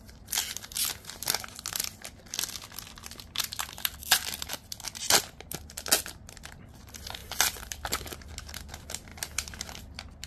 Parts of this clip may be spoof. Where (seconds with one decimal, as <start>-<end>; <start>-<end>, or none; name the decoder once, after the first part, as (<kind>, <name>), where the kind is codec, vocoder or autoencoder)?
7.2-8.3 (vocoder, BigVGAN v2)